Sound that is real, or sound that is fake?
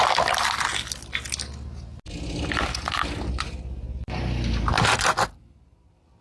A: real